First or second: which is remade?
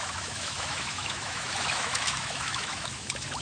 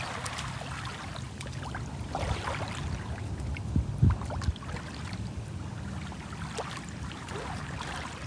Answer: first